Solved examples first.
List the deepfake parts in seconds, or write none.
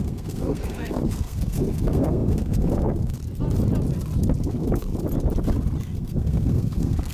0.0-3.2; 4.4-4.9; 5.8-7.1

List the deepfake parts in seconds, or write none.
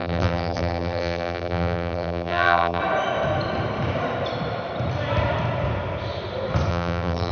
0.0-2.8; 6.7-7.3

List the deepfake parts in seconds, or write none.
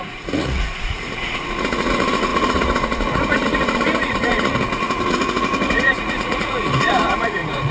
0.0-7.7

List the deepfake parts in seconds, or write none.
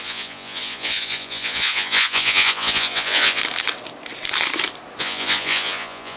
0.0-3.4; 5.0-6.2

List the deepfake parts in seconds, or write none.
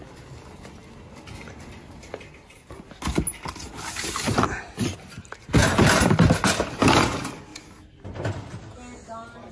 none